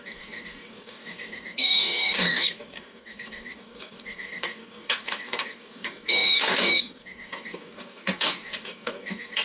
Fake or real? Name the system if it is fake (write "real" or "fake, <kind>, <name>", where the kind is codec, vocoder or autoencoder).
fake, codec, DAC